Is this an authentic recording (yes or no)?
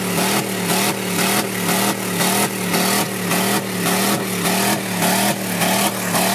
yes